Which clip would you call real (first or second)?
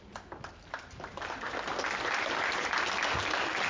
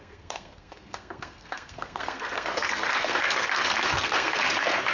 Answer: first